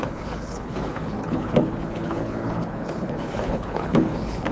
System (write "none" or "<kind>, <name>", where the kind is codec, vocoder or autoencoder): codec, HILCodec